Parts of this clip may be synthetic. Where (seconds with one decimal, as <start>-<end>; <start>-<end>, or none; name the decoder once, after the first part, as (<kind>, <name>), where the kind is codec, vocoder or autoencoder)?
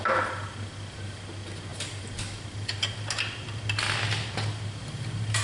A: none